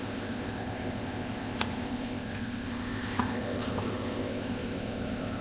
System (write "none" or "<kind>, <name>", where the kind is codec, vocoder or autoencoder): codec, ZipCodec